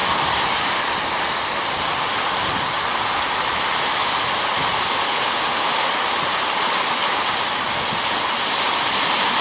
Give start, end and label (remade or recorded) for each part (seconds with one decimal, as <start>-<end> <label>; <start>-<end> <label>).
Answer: 0.0-9.4 recorded